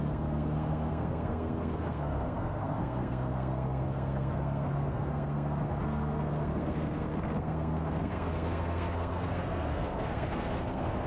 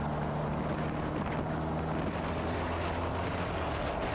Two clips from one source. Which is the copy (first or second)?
first